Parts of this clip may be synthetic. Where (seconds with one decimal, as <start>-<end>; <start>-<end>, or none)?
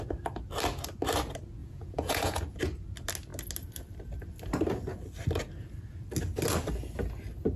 1.6-2.6